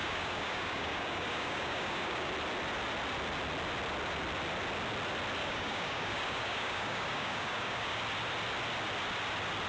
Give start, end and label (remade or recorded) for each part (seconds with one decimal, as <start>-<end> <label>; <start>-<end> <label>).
0.0-2.3 remade; 2.3-5.4 recorded; 5.4-8.0 remade; 8.0-9.7 recorded